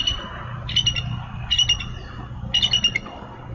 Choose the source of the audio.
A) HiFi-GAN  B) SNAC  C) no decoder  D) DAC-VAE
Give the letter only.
C